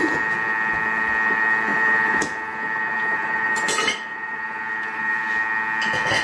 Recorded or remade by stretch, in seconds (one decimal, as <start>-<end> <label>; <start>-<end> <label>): 0.0-1.7 recorded; 1.7-5.3 remade; 5.3-6.2 recorded